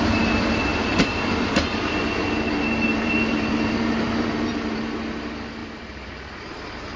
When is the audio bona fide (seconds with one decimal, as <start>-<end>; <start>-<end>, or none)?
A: 0.0-0.7; 1.8-2.9; 4.8-5.6